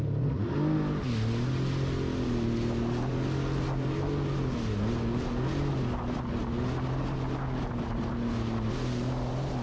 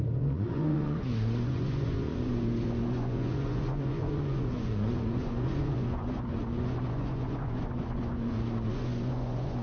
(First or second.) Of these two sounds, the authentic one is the first